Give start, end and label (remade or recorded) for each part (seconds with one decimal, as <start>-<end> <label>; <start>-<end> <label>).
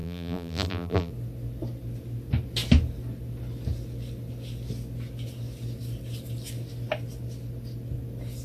0.0-1.1 remade; 1.1-8.4 recorded